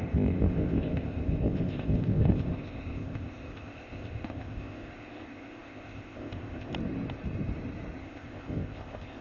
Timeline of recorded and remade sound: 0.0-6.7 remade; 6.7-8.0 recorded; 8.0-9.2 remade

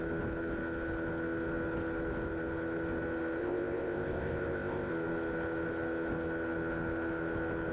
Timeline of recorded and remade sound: 0.0-3.4 recorded; 3.4-4.9 remade; 4.9-7.7 recorded

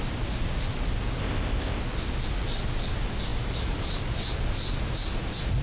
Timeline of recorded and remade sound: 0.0-1.2 recorded; 1.2-1.8 remade; 1.8-5.6 recorded

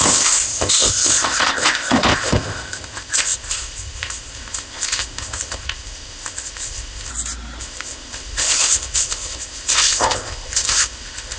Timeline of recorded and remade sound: 0.0-7.1 remade; 7.1-7.6 recorded; 7.6-11.4 remade